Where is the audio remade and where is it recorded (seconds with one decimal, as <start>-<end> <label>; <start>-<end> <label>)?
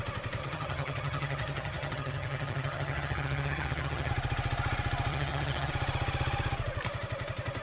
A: 0.0-0.4 recorded; 0.4-4.1 remade; 4.1-5.1 recorded; 5.1-5.7 remade; 5.7-7.6 recorded